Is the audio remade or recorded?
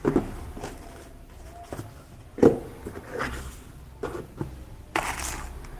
recorded